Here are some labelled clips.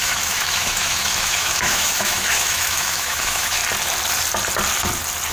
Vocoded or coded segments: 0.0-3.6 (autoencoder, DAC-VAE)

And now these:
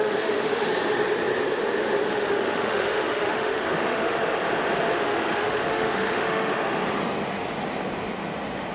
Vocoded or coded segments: 0.0-0.7 (autoencoder, DAC-VAE); 2.1-4.2; 4.9-6.8

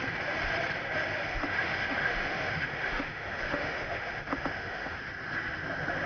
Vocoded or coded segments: 1.3-5.0 (autoencoder, DAC-VAE)